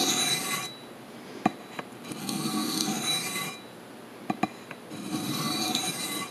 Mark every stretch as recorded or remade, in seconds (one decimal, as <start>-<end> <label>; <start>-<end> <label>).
0.0-2.2 recorded; 2.2-3.0 remade; 3.0-6.3 recorded